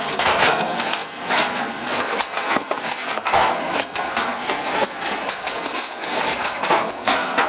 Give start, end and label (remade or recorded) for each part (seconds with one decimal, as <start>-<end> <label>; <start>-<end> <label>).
0.0-7.5 remade